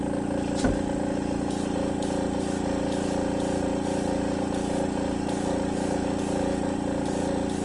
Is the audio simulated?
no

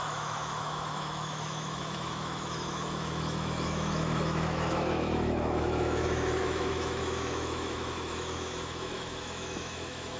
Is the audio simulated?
yes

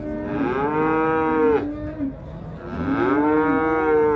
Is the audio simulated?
no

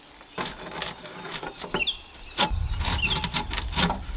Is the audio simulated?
no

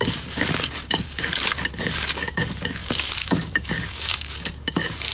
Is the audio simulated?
yes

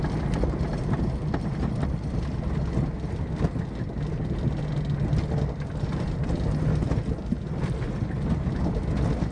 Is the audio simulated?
no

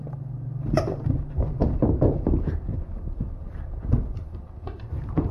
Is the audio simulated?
yes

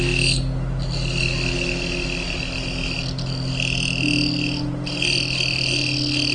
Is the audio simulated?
no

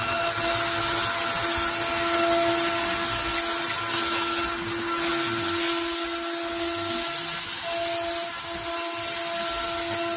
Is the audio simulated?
no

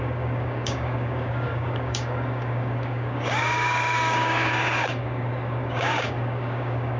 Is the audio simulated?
yes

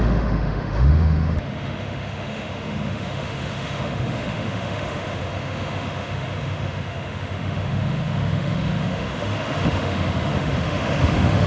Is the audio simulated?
yes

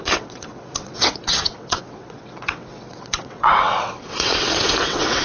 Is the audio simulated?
yes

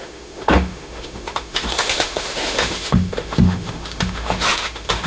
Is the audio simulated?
yes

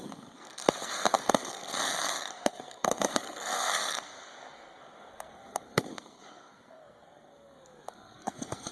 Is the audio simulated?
yes